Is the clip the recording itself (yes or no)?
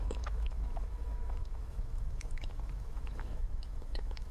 no